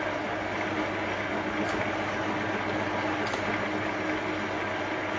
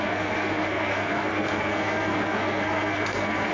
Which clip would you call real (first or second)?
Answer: first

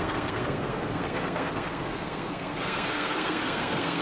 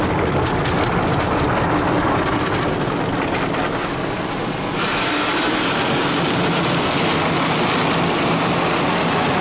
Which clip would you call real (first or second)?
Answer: second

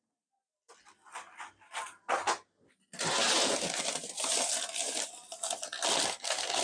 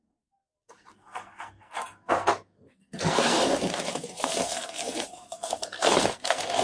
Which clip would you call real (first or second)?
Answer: first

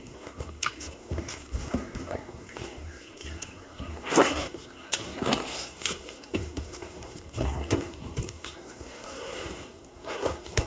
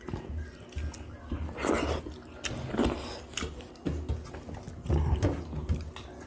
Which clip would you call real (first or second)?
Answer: second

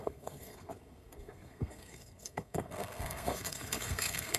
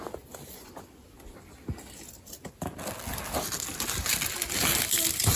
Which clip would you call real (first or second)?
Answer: second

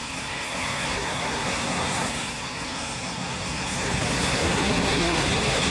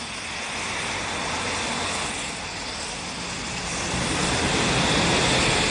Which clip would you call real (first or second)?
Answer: second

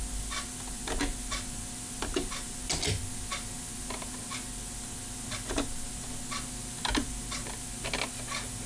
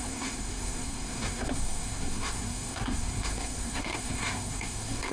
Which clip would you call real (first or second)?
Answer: first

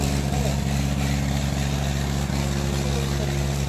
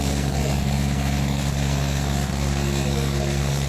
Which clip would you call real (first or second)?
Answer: first